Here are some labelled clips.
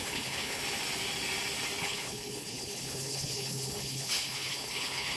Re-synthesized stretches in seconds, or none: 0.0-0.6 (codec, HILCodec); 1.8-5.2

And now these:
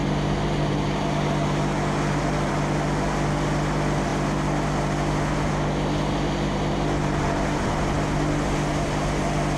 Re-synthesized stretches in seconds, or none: none